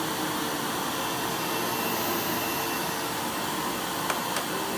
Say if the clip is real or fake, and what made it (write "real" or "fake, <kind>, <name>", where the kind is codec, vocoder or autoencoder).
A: real